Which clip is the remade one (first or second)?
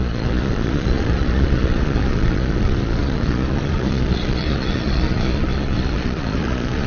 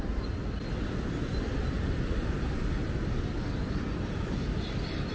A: first